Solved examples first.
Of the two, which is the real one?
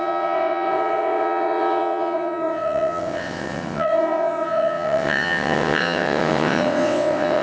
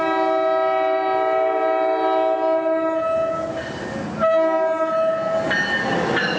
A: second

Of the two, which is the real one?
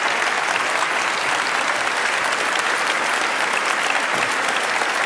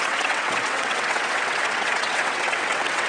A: first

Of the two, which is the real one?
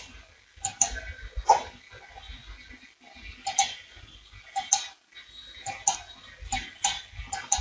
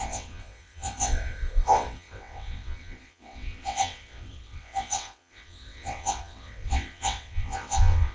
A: first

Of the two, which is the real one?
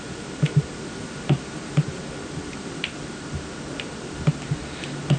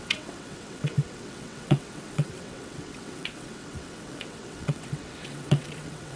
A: first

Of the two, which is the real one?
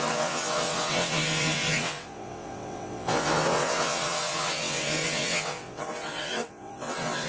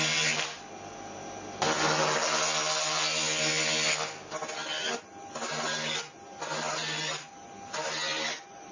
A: second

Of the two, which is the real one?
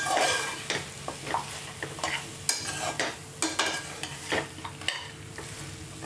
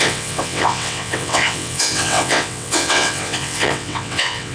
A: first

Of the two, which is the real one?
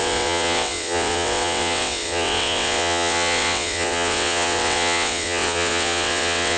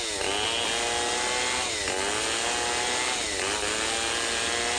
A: second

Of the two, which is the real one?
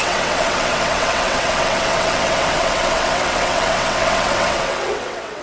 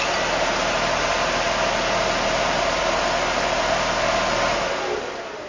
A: second